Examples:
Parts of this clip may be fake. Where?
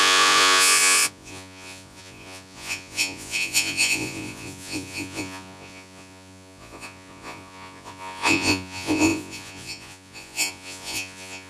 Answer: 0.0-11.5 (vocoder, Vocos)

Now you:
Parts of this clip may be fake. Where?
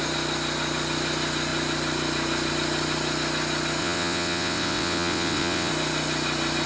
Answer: 3.8-5.7 (vocoder, WaveNeXt)